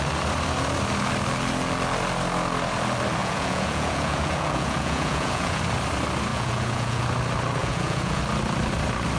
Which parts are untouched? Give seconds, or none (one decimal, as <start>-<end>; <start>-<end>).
0.0-3.2; 5.6-6.3; 7.0-7.6; 8.2-9.2

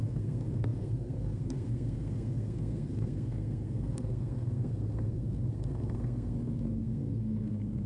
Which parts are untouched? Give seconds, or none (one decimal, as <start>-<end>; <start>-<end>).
none

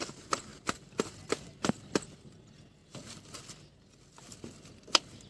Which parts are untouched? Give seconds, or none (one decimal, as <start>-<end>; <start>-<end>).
0.0-5.3

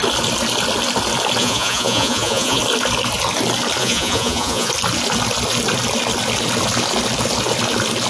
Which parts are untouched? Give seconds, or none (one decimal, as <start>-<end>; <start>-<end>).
0.0-1.4; 2.6-3.8; 4.7-8.1

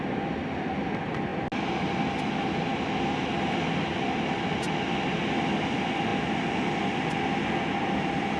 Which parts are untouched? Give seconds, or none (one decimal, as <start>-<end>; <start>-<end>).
0.0-8.4

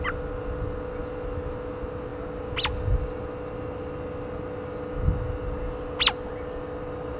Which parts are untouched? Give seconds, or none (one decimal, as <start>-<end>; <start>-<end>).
0.0-7.2